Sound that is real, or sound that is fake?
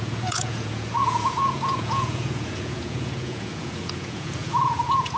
fake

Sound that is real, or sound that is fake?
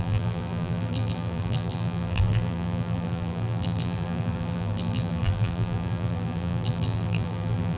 fake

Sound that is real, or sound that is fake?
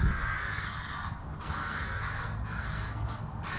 fake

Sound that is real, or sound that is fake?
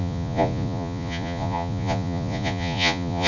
fake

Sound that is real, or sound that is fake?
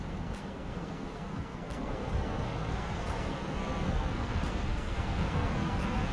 fake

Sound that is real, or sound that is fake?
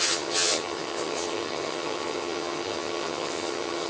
fake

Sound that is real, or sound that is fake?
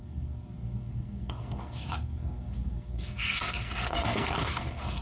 fake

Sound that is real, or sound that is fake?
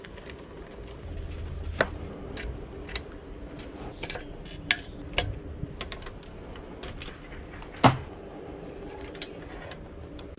real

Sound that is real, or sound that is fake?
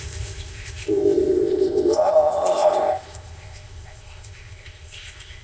fake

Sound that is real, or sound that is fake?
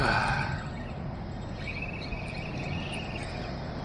real